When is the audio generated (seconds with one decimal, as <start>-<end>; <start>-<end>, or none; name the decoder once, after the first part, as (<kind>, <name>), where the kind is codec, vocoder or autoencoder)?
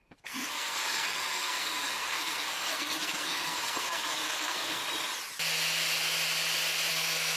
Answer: 0.0-4.8 (codec, SNAC); 6.9-7.4